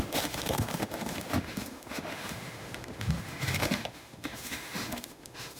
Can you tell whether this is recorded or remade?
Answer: remade